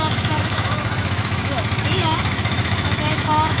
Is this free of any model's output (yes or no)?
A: no